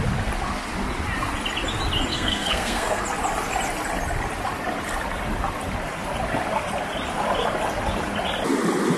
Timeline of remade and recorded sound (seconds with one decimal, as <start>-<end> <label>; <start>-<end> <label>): 0.0-2.1 recorded; 2.1-3.0 remade; 3.0-9.0 recorded